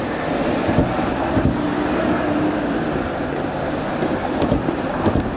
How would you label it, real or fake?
real